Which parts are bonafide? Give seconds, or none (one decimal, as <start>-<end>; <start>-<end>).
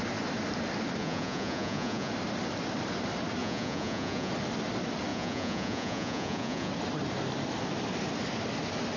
0.0-1.0; 2.1-3.4; 4.3-5.1; 6.7-9.0